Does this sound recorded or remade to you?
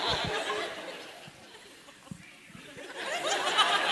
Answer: recorded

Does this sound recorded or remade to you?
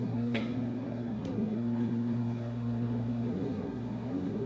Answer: remade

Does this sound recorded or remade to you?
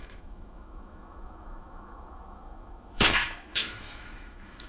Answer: remade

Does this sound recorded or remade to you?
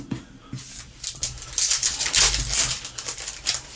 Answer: recorded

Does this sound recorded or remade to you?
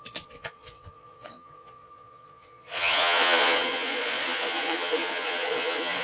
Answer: remade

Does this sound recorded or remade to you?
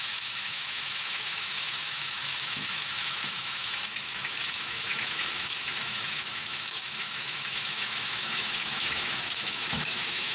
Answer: remade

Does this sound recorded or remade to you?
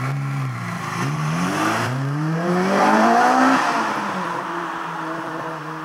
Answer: remade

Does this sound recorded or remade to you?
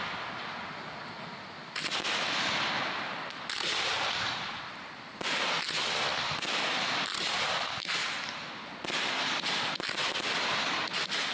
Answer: recorded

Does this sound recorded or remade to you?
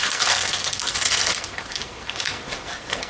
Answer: remade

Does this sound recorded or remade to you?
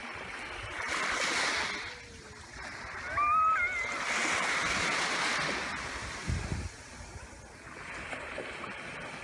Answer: recorded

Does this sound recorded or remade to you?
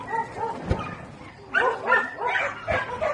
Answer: recorded